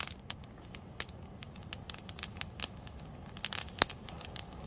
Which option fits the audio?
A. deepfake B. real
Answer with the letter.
B